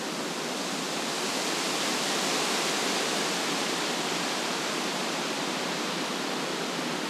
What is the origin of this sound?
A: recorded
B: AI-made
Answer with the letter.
A